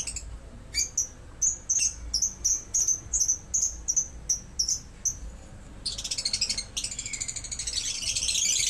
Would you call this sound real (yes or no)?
yes